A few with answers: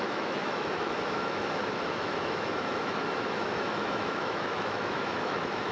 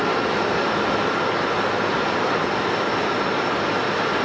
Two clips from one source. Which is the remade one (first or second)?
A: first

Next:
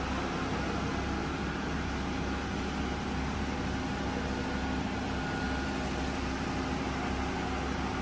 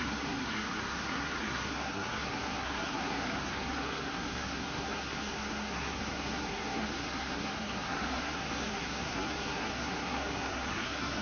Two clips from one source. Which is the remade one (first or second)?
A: second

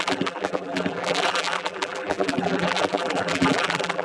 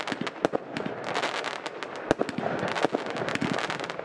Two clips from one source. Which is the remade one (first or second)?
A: first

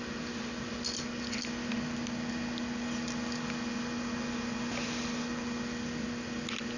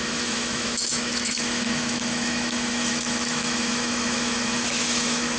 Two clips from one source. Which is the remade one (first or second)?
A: second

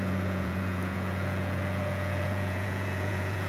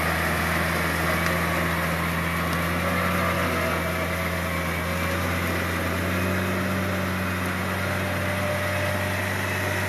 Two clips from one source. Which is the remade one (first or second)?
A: first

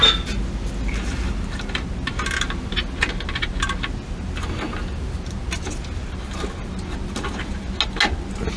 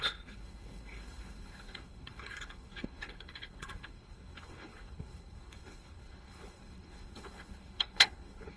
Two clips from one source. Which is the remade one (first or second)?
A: second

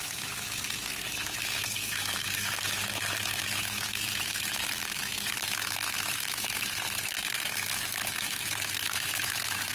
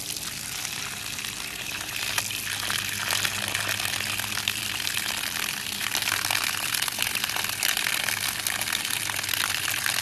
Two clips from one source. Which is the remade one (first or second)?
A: first